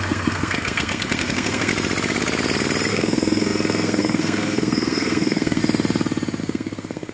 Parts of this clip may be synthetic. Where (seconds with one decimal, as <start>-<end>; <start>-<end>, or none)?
0.0-1.7; 2.9-5.6; 6.4-7.1